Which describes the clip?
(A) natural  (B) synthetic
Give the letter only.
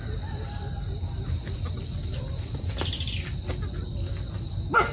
A